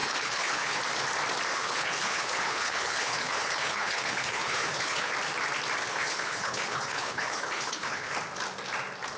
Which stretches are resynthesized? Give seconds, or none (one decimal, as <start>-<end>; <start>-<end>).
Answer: 0.0-0.8; 1.5-5.1; 5.9-8.1

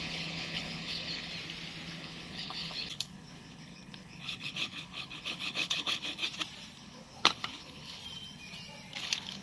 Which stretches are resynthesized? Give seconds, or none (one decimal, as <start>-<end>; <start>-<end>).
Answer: 0.0-1.3; 2.0-6.2; 6.8-8.0; 9.0-9.4

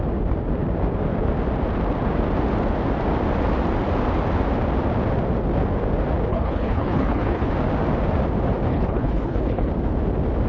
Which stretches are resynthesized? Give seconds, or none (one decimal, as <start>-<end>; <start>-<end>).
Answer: 6.3-7.5; 8.7-9.7

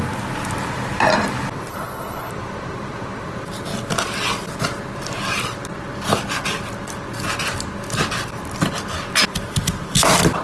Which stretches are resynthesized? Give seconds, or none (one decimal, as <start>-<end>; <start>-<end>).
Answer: 1.7-2.3

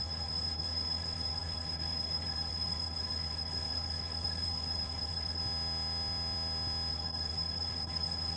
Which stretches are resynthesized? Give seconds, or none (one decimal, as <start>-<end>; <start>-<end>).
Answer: 0.0-5.4; 6.9-8.4